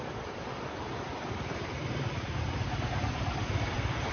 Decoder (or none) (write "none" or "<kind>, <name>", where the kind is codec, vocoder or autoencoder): vocoder, BigVGAN v2